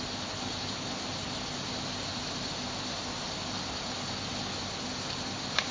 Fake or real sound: real